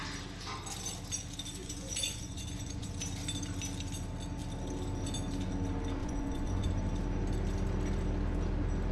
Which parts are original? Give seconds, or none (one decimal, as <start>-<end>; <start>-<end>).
0.0-1.6; 2.9-6.0; 6.7-8.9